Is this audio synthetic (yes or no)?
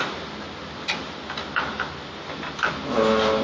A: no